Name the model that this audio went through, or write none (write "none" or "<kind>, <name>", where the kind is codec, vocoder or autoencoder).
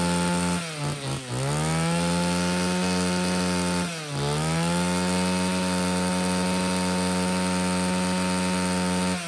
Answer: none